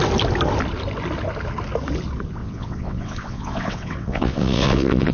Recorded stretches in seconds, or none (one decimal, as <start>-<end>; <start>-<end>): 0.0-2.4